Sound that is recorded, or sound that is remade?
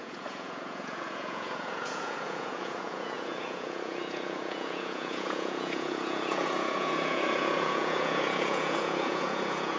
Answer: remade